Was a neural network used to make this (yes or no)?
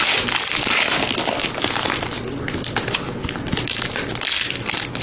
no